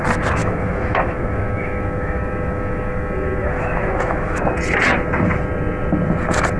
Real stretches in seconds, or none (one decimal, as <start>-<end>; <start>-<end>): 0.0-0.4; 4.4-6.6